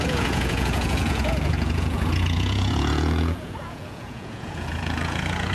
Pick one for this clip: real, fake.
fake